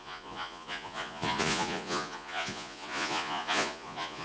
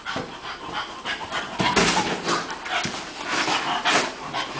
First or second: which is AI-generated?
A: first